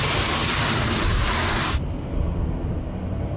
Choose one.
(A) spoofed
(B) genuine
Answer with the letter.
B